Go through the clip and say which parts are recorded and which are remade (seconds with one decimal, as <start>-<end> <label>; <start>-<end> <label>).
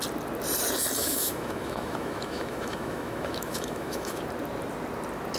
0.0-1.0 recorded; 1.0-4.2 remade; 4.2-5.4 recorded